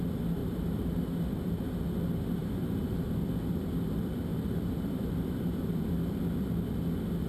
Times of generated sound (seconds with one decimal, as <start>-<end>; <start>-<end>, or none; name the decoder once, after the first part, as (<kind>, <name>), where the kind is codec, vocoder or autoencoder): 0.4-1.0 (vocoder, BigVGAN v2); 2.4-3.1; 4.3-5.8